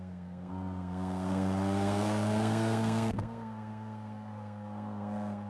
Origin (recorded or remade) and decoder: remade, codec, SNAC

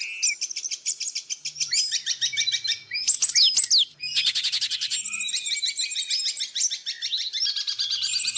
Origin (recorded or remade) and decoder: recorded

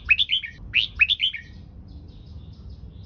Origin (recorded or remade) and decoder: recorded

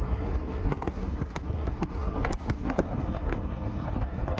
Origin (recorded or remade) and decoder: remade, codec, SNAC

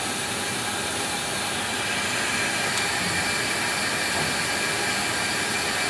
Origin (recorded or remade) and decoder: recorded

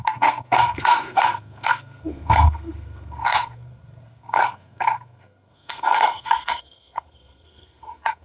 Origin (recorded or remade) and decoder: remade, codec, SNAC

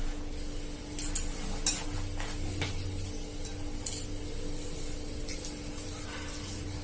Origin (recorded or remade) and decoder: recorded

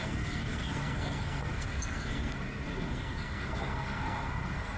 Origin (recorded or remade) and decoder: remade, codec, SNAC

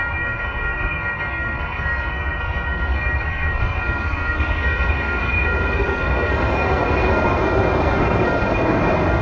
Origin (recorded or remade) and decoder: remade, codec, SNAC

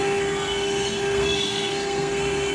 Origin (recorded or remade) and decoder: remade, codec, SNAC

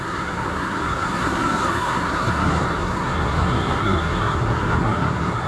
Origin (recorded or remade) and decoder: remade, codec, SNAC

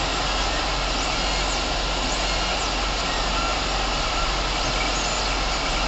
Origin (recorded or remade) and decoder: recorded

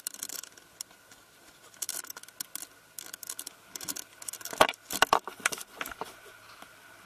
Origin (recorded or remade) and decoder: recorded